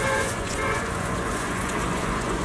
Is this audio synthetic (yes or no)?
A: yes